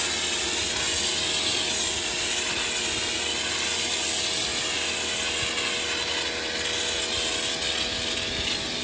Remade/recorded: recorded